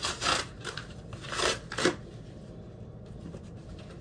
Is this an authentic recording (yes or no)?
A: no